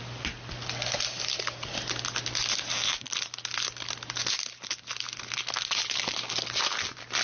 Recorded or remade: recorded